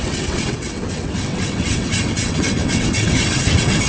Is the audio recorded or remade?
remade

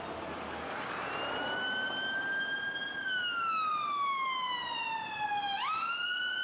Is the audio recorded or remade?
recorded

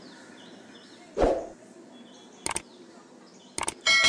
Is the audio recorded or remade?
recorded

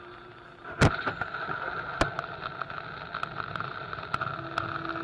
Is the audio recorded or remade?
recorded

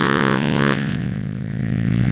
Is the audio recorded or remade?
remade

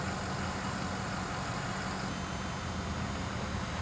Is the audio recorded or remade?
recorded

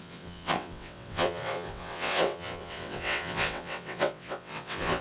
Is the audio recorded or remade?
remade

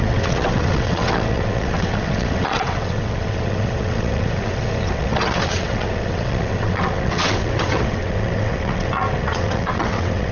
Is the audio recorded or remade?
remade